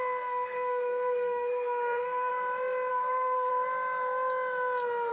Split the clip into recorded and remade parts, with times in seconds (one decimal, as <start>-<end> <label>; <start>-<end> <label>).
0.0-2.3 remade; 2.3-2.9 recorded; 2.9-3.5 remade; 3.5-5.1 recorded